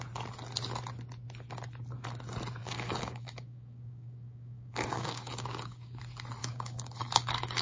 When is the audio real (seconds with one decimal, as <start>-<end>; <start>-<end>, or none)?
0.0-2.6; 6.0-6.4